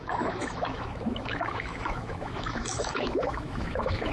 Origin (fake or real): fake